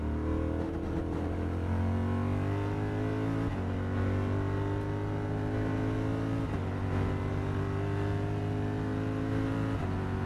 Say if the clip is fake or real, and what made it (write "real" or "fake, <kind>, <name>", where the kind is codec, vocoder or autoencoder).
real